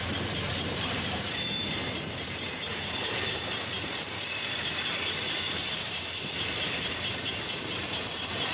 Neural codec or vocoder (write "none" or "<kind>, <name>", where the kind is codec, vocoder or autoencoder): vocoder, BigVGAN v2